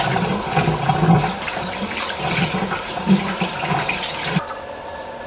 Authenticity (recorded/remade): recorded